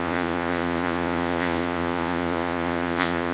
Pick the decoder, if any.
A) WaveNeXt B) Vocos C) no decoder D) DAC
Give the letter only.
B